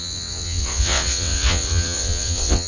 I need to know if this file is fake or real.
fake